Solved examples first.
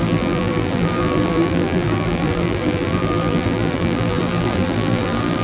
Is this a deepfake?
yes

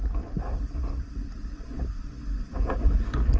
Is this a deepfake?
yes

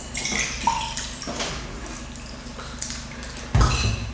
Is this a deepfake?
no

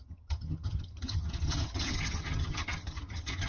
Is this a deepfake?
yes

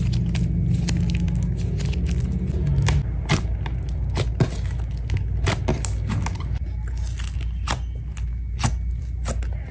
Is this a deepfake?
no